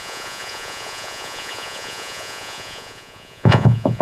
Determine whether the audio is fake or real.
fake